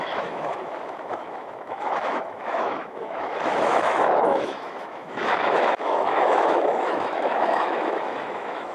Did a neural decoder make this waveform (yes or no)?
yes